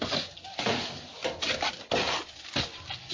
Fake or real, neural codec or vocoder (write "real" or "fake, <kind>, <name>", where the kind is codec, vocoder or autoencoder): real